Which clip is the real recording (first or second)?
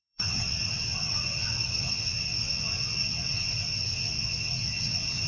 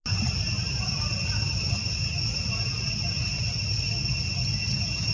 second